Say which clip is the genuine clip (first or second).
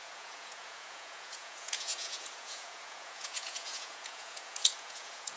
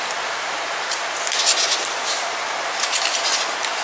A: second